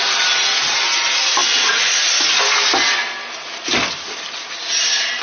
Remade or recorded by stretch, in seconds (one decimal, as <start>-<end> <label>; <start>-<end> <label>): 0.0-5.2 recorded